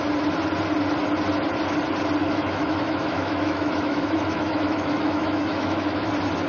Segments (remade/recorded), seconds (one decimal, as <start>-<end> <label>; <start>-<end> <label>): 0.0-2.2 recorded; 2.2-6.1 remade; 6.1-6.5 recorded